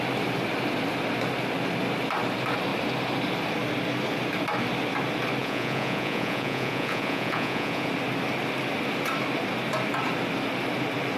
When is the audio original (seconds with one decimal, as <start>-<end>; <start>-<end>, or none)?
0.0-5.4; 7.9-11.2